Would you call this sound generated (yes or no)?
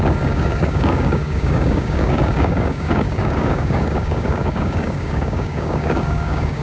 yes